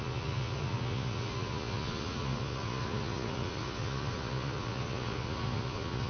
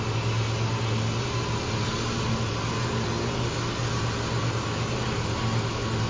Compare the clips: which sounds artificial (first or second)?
first